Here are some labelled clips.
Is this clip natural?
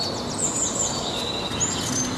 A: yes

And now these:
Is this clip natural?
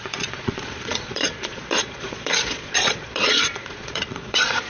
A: no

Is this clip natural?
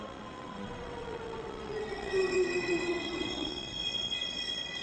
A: no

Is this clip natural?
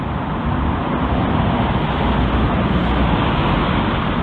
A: yes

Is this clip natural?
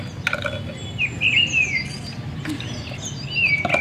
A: yes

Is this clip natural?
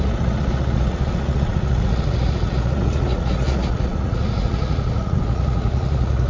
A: no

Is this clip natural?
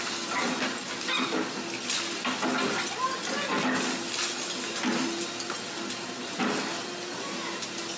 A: yes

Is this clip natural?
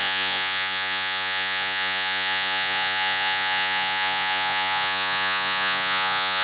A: no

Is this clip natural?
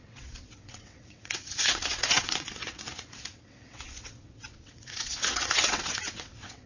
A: no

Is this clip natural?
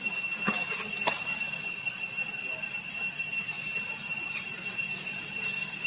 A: yes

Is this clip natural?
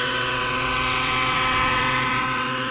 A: no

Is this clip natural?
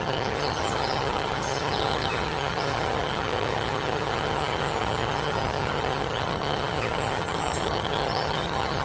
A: no